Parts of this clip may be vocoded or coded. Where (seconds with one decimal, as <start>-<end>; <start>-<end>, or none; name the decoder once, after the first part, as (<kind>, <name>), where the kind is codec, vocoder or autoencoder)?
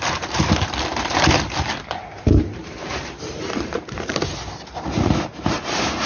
0.0-6.1 (vocoder, BigVGAN v2)